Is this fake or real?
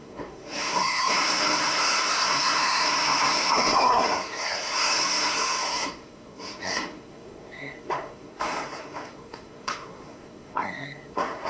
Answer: fake